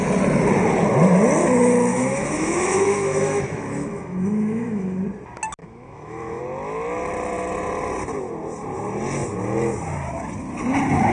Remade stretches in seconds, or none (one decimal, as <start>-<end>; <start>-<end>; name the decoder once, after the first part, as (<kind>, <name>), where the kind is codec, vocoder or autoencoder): 1.9-5.0 (autoencoder, DAC-VAE); 5.6-6.4